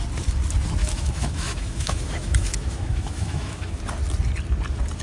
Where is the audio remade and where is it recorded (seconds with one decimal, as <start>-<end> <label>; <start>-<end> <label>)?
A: 0.0-0.8 recorded; 0.8-3.8 remade; 3.8-5.0 recorded